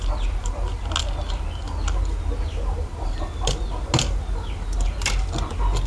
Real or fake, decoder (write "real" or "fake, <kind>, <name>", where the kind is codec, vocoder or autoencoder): real